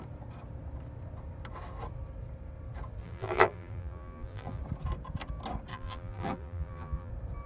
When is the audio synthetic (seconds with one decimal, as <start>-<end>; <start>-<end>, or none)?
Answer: 3.0-4.6; 5.7-7.1